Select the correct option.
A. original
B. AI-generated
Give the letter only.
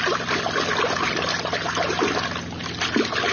A